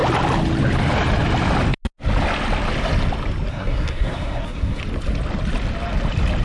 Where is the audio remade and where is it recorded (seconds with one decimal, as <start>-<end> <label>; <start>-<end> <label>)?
0.0-3.5 recorded; 3.5-4.8 remade; 4.8-6.4 recorded